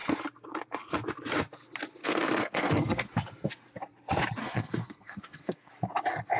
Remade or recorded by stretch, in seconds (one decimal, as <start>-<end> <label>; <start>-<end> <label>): 0.0-2.0 recorded; 2.0-3.1 remade; 3.1-4.4 recorded; 4.4-5.7 remade; 5.7-6.4 recorded